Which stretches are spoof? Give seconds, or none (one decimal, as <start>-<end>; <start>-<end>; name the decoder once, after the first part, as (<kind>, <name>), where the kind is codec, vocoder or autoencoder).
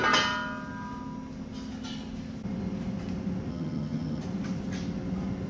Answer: 3.5-4.2 (vocoder, HiFi-GAN)